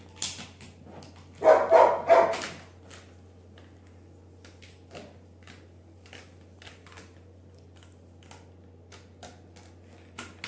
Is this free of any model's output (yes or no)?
yes